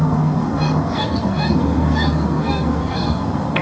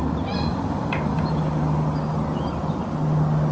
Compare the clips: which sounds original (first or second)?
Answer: second